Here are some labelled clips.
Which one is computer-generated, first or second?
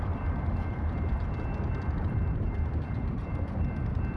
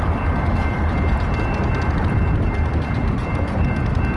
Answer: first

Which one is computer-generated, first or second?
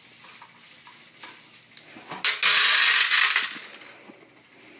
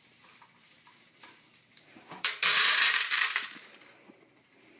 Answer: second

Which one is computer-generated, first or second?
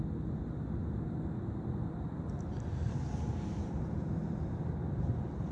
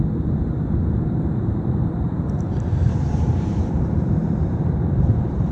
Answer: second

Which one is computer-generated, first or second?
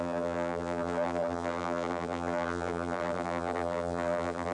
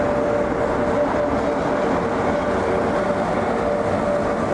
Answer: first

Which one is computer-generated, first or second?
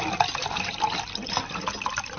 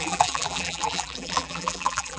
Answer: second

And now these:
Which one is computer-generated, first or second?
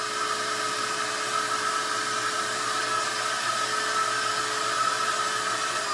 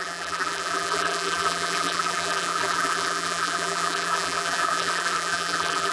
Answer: second